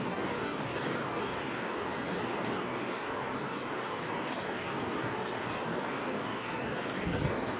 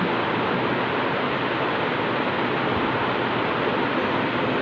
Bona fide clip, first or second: second